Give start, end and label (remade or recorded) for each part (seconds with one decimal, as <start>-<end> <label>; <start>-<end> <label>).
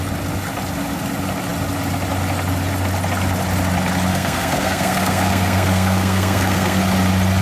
0.0-4.1 recorded; 4.1-6.8 remade; 6.8-7.4 recorded